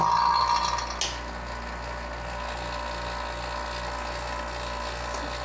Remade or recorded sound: recorded